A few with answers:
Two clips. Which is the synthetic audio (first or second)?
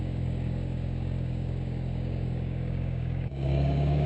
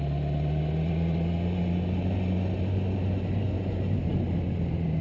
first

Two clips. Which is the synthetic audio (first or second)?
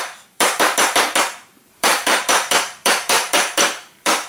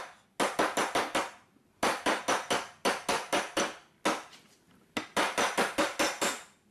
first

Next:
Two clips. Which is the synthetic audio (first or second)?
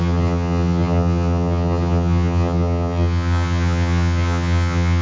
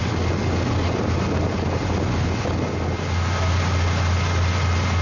first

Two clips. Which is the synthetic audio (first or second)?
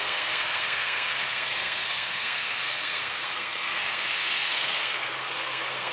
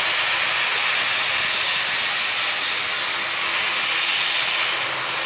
first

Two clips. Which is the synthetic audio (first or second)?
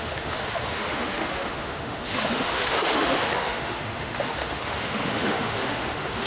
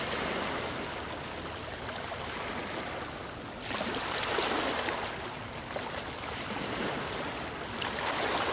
first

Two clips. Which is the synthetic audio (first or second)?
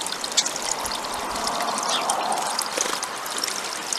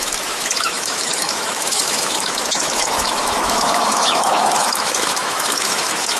second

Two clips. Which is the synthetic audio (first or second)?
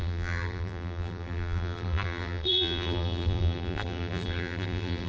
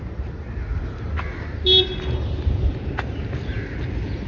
first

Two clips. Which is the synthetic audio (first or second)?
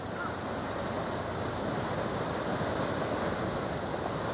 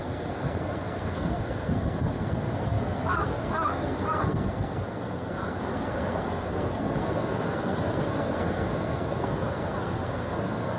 second